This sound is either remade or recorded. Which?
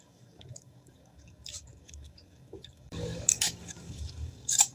remade